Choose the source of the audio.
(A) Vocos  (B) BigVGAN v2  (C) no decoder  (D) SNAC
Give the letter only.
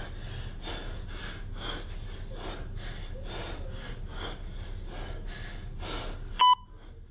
C